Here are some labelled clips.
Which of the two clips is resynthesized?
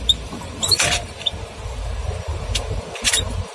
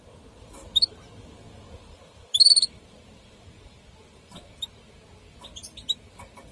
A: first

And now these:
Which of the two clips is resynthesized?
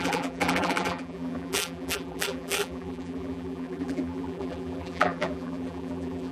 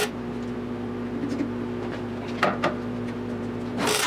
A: first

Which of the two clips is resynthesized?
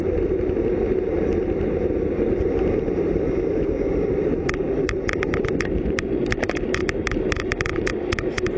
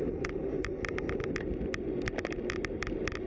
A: first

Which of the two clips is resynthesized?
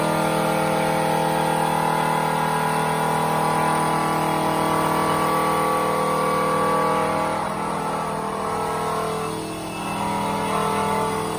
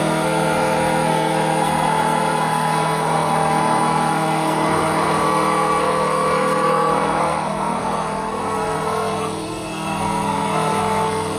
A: second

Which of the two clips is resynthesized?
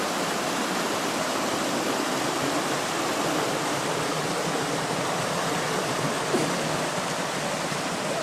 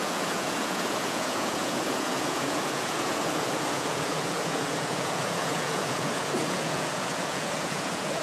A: second